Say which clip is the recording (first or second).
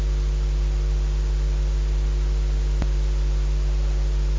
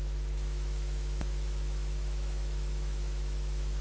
first